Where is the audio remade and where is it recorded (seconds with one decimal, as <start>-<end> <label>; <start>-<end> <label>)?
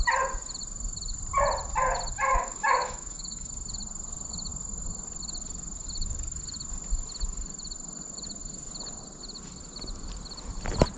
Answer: 0.0-2.3 recorded; 2.3-3.5 remade; 3.5-11.0 recorded